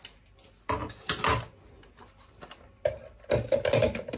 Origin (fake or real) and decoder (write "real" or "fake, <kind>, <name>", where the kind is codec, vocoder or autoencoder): real